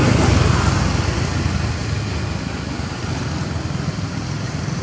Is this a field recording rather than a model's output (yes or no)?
yes